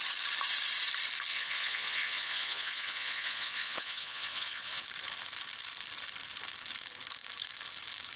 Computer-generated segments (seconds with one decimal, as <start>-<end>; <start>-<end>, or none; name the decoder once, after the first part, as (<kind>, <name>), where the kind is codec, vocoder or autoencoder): 1.3-4.8 (vocoder, Vocos)

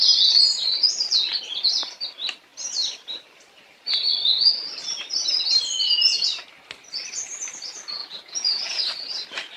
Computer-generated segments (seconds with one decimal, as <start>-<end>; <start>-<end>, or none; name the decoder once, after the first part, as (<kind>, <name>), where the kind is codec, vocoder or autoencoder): 8.0-8.8 (vocoder, Vocos)

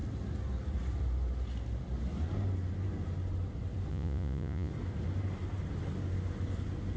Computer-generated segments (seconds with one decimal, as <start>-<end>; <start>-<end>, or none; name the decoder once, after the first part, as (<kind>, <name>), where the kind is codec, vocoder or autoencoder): 3.9-4.7 (vocoder, Vocos)

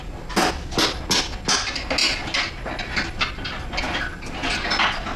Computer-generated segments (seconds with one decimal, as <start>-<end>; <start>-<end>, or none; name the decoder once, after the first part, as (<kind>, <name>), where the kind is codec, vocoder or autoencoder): none

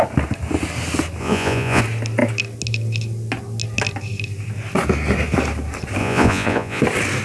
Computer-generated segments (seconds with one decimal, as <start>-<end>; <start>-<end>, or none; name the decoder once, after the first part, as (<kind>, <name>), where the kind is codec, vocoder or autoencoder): 1.2-1.8 (vocoder, Vocos); 6.0-6.8

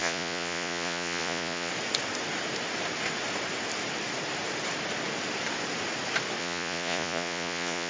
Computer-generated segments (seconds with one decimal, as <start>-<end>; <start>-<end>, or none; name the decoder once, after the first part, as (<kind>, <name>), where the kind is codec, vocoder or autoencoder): 0.0-1.7 (vocoder, Vocos); 6.4-7.9

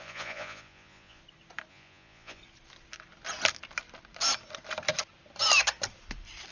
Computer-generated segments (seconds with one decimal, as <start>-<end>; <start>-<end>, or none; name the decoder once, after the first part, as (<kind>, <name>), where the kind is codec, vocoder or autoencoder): 0.0-1.2 (vocoder, Vocos); 1.7-2.4